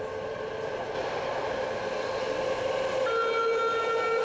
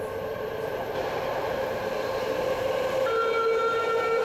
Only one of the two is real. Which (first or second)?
first